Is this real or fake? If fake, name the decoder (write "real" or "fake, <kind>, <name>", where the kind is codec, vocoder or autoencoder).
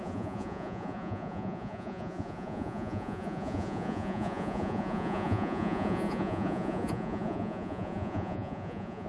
fake, vocoder, Vocos